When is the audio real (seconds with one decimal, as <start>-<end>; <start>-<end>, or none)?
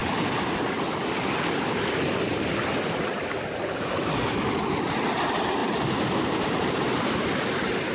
0.0-7.9